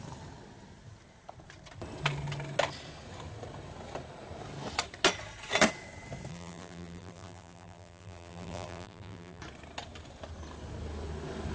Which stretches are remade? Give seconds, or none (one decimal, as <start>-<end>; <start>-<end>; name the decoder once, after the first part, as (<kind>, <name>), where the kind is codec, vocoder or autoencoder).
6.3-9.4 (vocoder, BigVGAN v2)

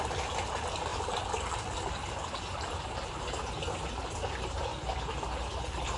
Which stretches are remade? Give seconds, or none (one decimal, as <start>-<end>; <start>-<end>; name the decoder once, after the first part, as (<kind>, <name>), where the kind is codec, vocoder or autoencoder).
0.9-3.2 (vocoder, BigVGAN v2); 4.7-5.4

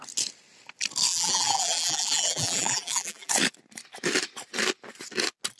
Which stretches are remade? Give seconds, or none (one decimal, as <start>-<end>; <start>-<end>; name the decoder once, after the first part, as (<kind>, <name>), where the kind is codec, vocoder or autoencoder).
1.1-3.3 (vocoder, BigVGAN v2)